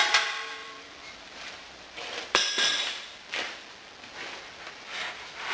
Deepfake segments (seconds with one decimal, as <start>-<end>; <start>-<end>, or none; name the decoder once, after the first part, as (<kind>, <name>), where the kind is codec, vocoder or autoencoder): 0.6-3.9 (vocoder, BigVGAN v2)

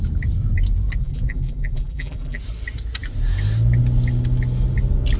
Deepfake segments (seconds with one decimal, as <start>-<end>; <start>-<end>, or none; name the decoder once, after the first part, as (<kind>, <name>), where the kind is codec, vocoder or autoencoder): 1.0-2.4 (vocoder, BigVGAN v2)

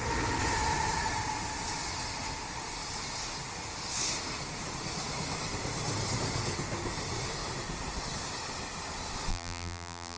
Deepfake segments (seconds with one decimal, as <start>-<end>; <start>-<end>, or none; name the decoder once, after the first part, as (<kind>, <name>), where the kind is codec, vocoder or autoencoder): 9.3-10.2 (vocoder, BigVGAN v2)

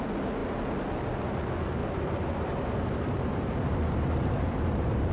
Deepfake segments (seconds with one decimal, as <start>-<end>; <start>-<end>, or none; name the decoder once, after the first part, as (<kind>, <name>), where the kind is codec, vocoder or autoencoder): 1.8-5.1 (vocoder, BigVGAN v2)

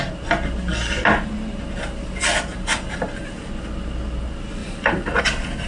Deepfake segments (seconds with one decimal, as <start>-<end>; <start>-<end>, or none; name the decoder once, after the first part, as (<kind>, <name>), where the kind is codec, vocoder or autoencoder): 2.5-3.5 (vocoder, BigVGAN v2); 4.6-5.2